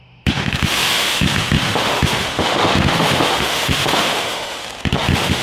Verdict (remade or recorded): remade